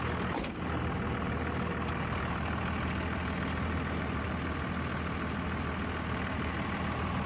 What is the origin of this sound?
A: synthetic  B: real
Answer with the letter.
B